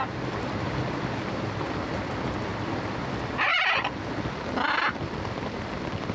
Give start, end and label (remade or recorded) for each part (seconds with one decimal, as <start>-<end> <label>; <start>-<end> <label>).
0.0-6.1 recorded